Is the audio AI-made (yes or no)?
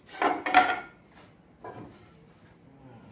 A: no